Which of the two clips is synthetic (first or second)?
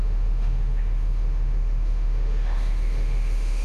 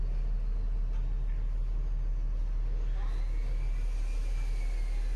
first